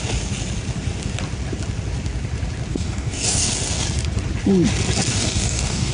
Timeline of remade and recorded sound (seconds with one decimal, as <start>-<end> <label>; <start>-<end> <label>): 0.0-2.7 recorded; 2.7-3.5 remade; 3.5-5.1 recorded; 5.1-5.9 remade